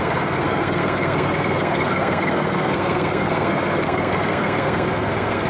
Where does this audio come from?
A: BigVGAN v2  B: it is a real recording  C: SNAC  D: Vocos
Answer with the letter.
C